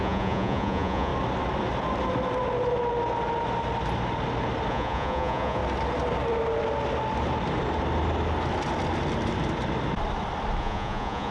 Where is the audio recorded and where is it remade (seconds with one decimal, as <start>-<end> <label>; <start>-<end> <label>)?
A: 0.0-1.1 remade; 1.1-4.7 recorded; 4.7-5.6 remade; 5.6-10.6 recorded; 10.6-11.3 remade